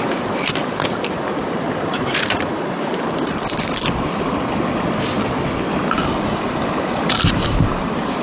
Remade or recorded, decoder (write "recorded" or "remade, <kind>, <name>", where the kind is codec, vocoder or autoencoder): remade, vocoder, BigVGAN v2